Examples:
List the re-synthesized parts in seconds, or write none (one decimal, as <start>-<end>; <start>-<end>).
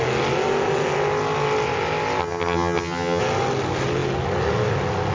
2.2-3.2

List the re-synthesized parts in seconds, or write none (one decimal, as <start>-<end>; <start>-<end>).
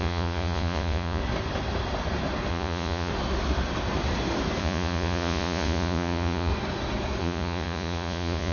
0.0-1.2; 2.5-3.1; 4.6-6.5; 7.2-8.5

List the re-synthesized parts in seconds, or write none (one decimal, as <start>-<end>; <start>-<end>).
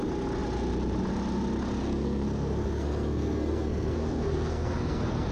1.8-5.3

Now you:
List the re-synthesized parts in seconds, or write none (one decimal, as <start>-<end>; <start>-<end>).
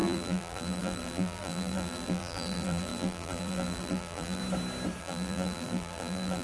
0.0-4.4; 5.0-6.4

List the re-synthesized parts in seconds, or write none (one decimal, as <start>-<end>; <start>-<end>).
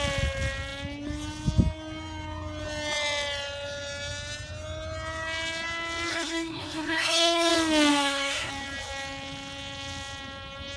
6.1-7.5; 7.9-8.5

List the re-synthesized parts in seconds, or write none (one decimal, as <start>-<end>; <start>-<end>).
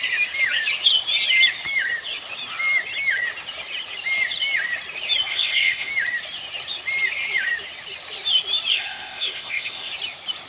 5.3-5.9; 8.7-9.9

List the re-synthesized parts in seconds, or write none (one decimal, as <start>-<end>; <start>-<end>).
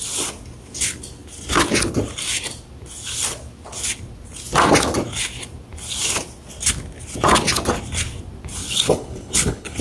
8.6-9.8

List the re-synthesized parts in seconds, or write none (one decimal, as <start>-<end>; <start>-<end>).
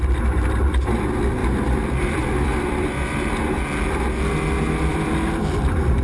1.4-3.3; 4.9-6.0